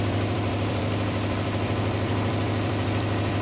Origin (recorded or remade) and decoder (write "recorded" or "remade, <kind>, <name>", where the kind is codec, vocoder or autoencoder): remade, vocoder, BigVGAN v2